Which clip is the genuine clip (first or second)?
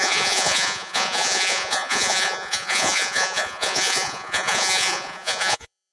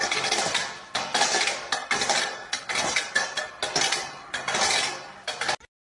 second